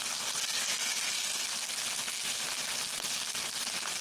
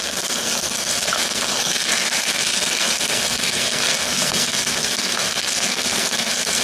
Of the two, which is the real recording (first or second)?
first